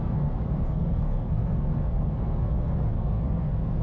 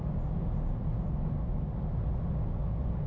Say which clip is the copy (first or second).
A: first